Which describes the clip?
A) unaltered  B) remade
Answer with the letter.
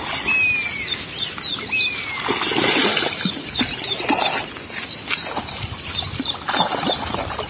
A